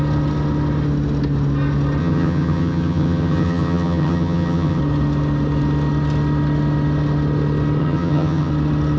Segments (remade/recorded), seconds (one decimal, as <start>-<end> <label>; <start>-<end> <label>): 0.0-2.0 recorded; 2.0-4.8 remade; 4.8-7.8 recorded; 7.8-8.5 remade; 8.5-9.0 recorded